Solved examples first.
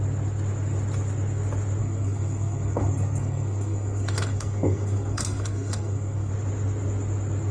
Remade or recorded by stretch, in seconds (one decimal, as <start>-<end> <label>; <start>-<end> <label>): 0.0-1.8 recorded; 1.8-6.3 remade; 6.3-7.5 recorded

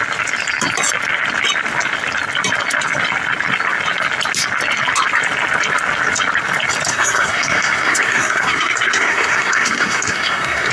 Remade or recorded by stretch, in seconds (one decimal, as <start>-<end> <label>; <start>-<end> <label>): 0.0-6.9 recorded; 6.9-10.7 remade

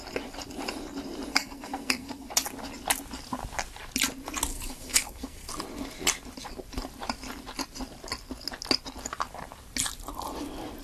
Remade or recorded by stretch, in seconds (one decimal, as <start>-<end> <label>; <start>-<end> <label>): 0.0-1.3 recorded; 1.3-2.3 remade; 2.3-4.5 recorded; 4.5-5.5 remade; 5.5-10.8 recorded